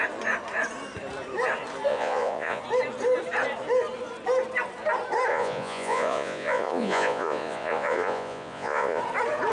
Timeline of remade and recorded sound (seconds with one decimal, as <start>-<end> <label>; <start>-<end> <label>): 0.0-1.9 recorded; 1.9-2.6 remade; 2.6-5.3 recorded; 5.3-9.0 remade; 9.0-9.5 recorded